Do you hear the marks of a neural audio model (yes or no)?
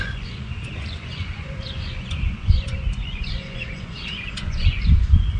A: yes